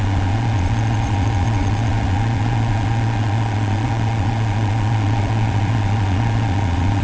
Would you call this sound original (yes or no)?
no